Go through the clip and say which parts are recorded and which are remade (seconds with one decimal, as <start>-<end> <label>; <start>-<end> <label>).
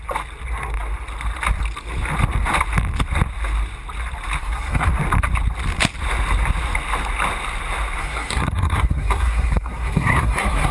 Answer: 0.0-4.4 recorded; 4.4-4.9 remade; 4.9-8.0 recorded; 8.0-10.7 remade